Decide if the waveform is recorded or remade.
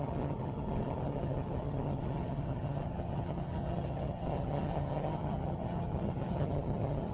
remade